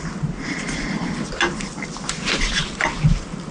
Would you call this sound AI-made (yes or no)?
no